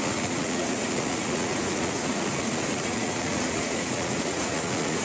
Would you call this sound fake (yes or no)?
yes